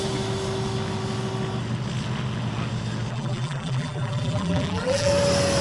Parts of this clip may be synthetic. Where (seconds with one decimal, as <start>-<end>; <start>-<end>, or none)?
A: 3.1-5.1